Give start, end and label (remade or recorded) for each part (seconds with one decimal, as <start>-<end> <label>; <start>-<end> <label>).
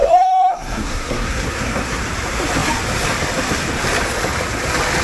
0.0-2.0 remade; 2.0-5.0 recorded